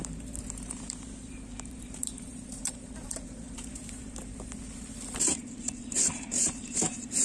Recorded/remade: remade